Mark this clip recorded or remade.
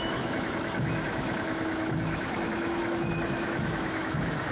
remade